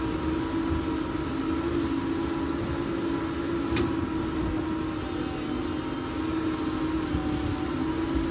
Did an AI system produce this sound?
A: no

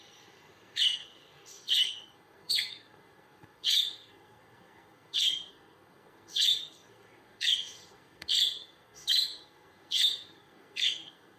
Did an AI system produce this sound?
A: yes